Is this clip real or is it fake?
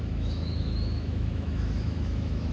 fake